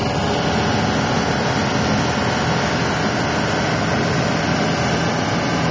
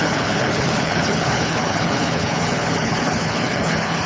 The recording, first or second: first